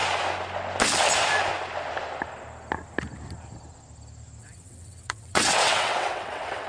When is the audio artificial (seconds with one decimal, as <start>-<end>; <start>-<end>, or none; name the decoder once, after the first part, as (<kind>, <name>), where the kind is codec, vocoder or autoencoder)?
4.4-6.7 (vocoder, WaveNeXt)